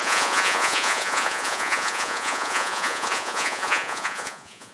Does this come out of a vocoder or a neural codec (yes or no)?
yes